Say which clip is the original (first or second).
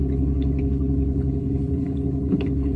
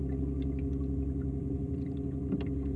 second